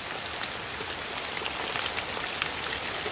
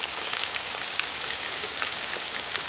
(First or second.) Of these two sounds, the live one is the first